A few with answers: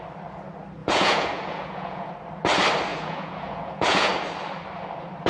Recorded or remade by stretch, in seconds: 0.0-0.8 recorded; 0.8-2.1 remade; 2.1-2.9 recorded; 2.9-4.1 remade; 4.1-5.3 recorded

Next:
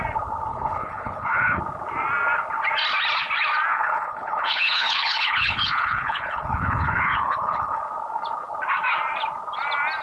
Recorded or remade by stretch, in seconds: 0.0-0.5 recorded; 0.5-1.6 remade; 1.6-3.7 recorded; 3.7-7.8 remade; 7.8-10.0 recorded

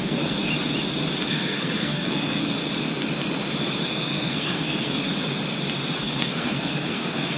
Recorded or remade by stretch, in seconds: 0.0-0.5 remade; 0.5-1.3 recorded; 1.3-2.6 remade; 2.6-3.9 recorded; 3.9-5.0 remade; 5.0-6.0 recorded; 6.0-7.4 remade

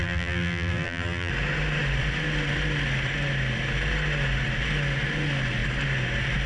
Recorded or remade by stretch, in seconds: 0.0-1.3 remade; 1.3-6.5 recorded

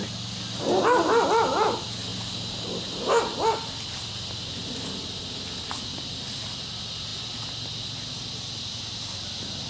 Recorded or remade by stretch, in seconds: 0.0-9.7 recorded